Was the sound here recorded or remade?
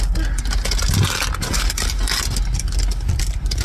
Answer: recorded